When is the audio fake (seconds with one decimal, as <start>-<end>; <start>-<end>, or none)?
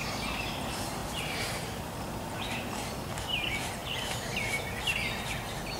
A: 0.0-0.5; 1.0-2.6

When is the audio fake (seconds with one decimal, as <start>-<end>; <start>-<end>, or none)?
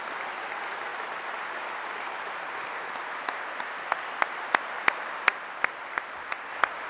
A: 0.0-0.9; 4.1-6.9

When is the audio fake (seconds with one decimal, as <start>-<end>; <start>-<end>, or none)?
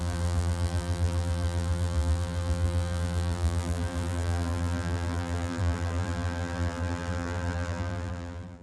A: 0.0-8.6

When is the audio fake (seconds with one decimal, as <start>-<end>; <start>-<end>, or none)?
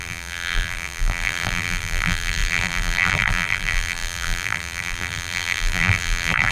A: 0.0-6.5